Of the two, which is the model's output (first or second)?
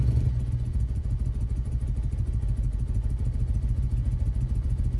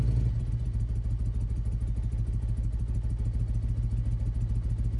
first